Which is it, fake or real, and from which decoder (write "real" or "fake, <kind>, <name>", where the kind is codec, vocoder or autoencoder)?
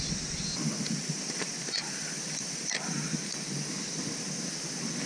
real